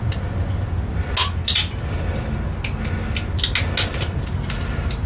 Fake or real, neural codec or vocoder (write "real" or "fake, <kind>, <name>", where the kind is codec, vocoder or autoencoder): real